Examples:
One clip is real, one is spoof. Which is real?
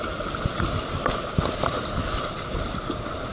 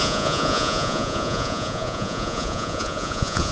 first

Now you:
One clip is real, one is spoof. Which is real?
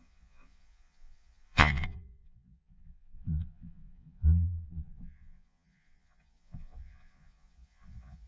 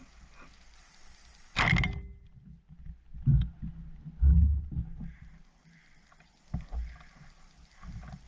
second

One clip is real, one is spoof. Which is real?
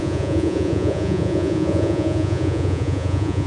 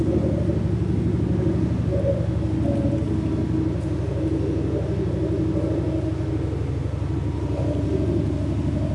second